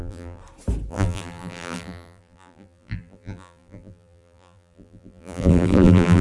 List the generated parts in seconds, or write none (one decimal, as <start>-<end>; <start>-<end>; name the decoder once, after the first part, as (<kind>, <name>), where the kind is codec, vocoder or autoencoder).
0.0-0.4 (vocoder, BigVGAN v2); 0.9-6.2